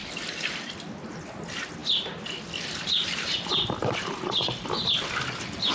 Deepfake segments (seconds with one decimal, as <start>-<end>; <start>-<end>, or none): 0.0-1.2